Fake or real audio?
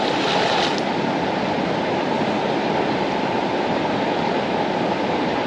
real